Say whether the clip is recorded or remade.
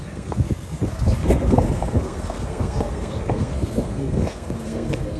remade